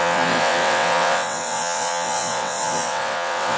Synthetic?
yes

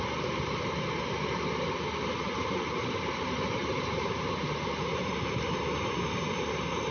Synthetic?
yes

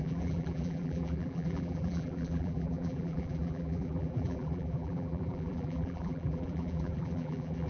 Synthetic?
yes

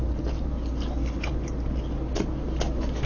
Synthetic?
no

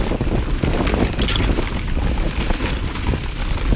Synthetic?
no